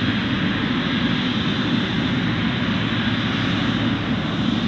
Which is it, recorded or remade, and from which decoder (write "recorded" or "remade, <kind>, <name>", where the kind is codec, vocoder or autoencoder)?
recorded